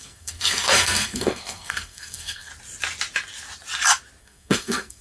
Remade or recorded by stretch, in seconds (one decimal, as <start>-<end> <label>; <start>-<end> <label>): 0.0-2.5 remade; 2.5-4.2 recorded; 4.2-5.0 remade